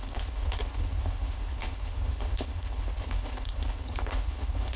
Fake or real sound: fake